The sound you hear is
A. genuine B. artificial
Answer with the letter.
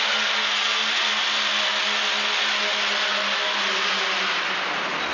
A